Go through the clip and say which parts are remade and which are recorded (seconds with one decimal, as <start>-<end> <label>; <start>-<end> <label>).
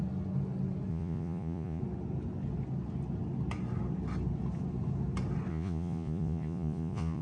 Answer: 0.0-0.9 recorded; 0.9-1.8 remade; 1.8-5.5 recorded; 5.5-7.2 remade